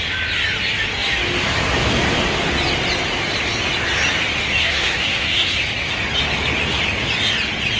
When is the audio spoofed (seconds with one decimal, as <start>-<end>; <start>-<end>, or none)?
4.6-5.6